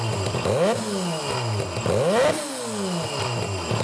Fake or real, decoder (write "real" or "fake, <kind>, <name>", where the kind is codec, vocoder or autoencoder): real